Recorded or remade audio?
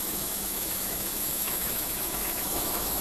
remade